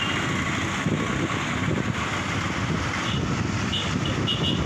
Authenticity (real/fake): real